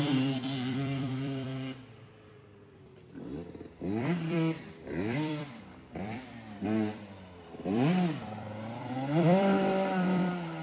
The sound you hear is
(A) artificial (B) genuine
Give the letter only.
A